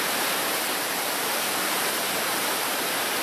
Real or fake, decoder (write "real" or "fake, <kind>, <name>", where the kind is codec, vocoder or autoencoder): fake, vocoder, BigVGAN v2